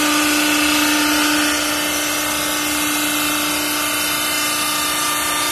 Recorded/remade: recorded